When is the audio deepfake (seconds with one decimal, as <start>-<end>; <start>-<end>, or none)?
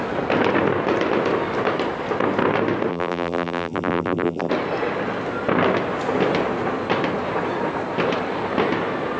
2.9-4.5